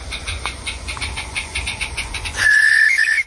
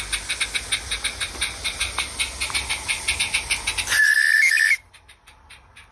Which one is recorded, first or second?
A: second